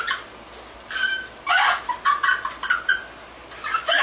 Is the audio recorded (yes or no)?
yes